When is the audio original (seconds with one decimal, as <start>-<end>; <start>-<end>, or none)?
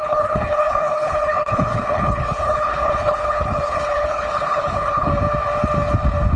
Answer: 5.1-6.4